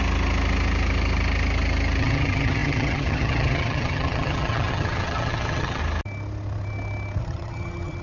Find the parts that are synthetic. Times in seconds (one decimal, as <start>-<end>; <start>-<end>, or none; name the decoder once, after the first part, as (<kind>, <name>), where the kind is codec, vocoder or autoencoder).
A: 2.0-5.8 (vocoder, HiFi-GAN); 7.2-8.0